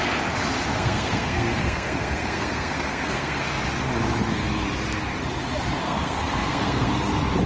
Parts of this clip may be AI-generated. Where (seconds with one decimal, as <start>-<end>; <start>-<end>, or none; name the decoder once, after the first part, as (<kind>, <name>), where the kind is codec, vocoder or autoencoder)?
0.7-3.4 (codec, SNAC); 5.8-6.9